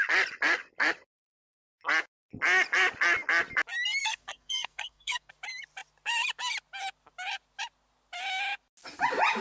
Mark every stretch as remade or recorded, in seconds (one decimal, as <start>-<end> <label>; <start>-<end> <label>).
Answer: 0.0-4.0 recorded; 4.0-5.3 remade; 5.3-9.4 recorded

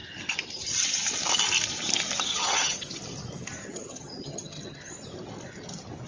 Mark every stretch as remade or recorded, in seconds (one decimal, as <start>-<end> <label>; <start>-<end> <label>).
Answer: 0.0-2.3 recorded; 2.3-3.0 remade; 3.0-3.6 recorded; 3.6-4.9 remade; 4.9-6.1 recorded

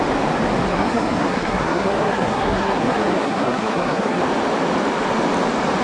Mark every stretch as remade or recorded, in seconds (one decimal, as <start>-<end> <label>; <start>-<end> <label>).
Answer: 0.0-0.7 recorded; 0.7-4.2 remade; 4.2-5.8 recorded

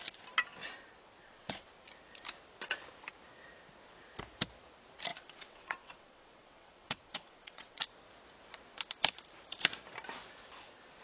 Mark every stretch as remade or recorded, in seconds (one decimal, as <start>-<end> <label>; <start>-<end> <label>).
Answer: 0.0-1.2 recorded; 1.2-1.7 remade; 1.7-5.1 recorded; 5.1-7.8 remade; 7.8-11.0 recorded